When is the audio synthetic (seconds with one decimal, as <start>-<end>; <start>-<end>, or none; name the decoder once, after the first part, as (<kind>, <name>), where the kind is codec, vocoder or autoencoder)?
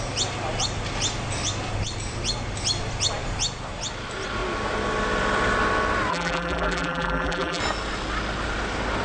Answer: 6.1-7.6 (vocoder, BigVGAN v2)